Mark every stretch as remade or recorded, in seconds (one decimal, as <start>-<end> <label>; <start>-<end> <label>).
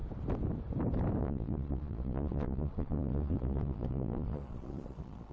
0.0-1.2 recorded; 1.2-5.3 remade